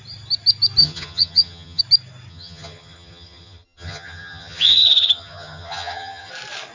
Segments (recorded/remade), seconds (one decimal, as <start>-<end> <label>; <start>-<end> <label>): 0.0-0.8 recorded; 0.8-1.8 remade; 1.8-2.3 recorded; 2.3-6.3 remade; 6.3-6.7 recorded